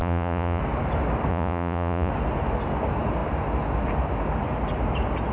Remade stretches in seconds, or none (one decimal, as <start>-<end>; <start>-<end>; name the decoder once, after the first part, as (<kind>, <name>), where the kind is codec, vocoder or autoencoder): 0.0-0.6 (vocoder, Vocos); 1.3-2.1